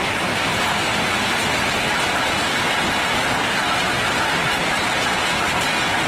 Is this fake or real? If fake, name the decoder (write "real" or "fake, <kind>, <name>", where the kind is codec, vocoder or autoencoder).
real